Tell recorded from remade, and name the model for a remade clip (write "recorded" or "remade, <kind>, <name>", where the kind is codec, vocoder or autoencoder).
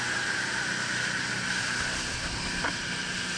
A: recorded